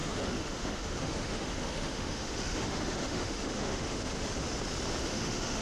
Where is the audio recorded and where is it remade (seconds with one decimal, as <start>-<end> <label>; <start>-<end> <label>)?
0.0-4.4 remade; 4.4-5.0 recorded; 5.0-5.6 remade